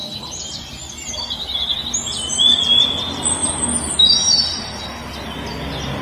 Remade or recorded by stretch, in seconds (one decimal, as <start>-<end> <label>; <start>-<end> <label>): 0.0-6.0 recorded